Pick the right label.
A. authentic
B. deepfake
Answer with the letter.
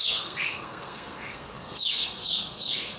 B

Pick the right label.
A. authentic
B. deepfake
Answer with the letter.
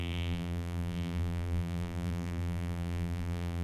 B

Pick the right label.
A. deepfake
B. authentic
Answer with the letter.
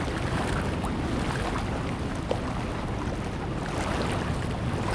B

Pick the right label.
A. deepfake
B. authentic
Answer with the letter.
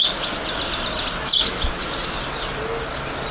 B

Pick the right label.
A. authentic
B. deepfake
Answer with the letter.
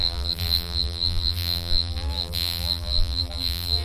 B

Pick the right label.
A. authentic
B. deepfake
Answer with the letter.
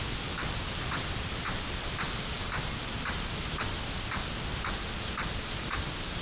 A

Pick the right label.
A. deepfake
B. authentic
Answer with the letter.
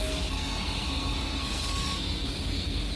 A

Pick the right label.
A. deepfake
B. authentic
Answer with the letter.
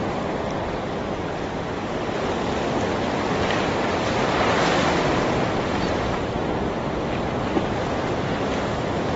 B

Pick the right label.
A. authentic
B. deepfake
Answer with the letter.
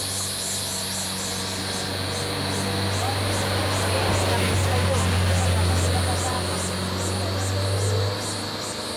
A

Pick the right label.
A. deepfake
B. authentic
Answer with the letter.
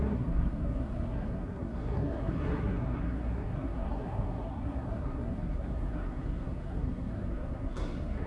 A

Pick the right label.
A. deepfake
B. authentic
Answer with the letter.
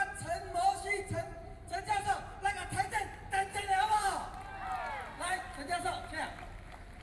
A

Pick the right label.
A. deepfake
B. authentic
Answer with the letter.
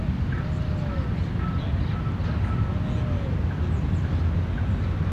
B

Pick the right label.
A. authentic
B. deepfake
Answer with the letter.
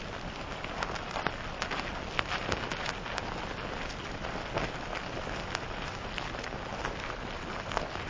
A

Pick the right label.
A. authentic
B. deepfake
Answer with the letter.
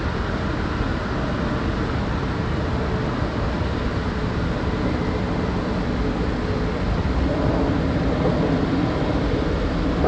A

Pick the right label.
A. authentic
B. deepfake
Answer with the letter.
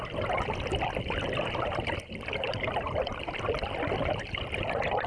A